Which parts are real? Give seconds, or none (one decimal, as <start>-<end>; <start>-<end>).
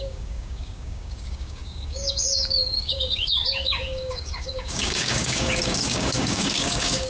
none